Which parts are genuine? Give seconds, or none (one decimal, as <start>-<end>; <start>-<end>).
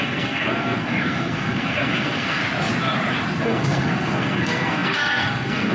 2.4-3.4